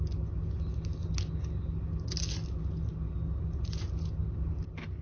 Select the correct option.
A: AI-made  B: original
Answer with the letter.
B